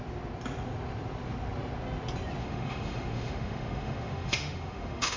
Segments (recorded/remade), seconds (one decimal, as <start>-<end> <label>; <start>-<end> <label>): 0.0-2.4 recorded; 2.4-5.2 remade